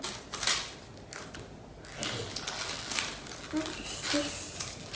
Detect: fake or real real